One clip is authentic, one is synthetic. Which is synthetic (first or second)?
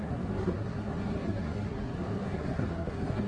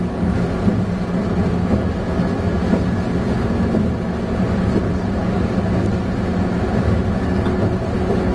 first